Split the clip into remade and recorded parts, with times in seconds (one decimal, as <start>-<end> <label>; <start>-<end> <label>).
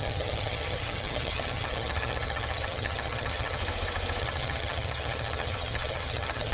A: 0.0-3.6 remade; 3.6-4.2 recorded; 4.2-6.5 remade